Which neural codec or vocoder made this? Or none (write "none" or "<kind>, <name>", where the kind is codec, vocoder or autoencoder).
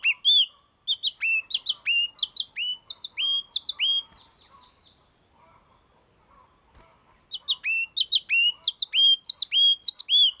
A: none